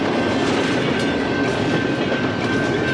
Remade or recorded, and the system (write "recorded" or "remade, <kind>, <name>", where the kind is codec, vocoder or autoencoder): recorded